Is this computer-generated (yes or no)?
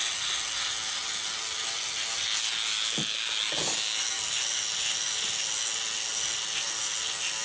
no